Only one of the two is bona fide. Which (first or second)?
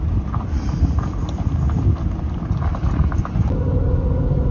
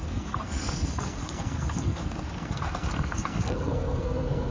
first